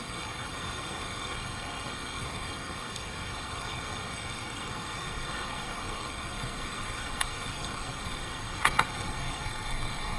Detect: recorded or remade remade